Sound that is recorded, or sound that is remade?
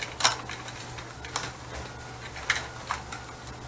recorded